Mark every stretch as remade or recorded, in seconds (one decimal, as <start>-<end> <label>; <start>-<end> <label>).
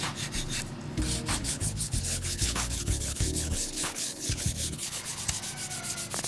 0.0-1.4 recorded; 1.4-5.2 remade; 5.2-6.3 recorded